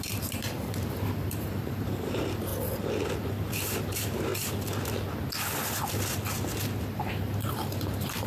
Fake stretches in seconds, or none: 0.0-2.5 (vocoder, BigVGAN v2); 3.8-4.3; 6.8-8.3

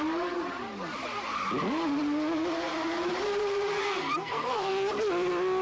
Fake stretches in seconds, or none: 3.8-4.7 (codec, SNAC)

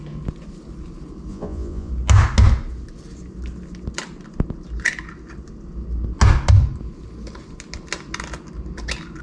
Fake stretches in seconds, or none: 1.3-1.9 (vocoder, Vocos)